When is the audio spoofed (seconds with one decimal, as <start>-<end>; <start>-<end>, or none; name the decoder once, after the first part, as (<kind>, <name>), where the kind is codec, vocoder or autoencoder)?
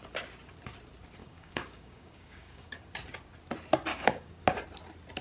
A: 1.2-2.8 (codec, DAC); 3.9-4.4